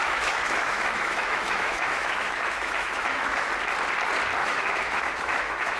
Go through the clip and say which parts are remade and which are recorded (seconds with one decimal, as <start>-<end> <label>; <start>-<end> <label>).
0.0-3.5 remade; 3.5-4.4 recorded; 4.4-5.8 remade